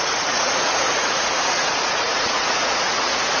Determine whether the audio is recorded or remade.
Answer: remade